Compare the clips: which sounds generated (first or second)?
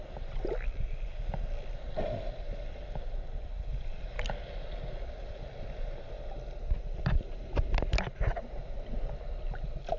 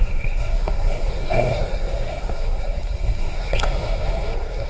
second